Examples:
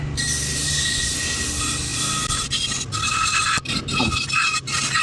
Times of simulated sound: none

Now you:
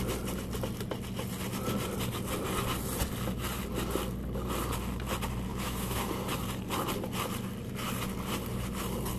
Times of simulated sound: 5.5-6.1

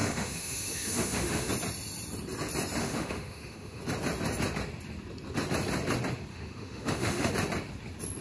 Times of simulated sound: 0.0-1.5; 2.8-3.8; 6.3-7.3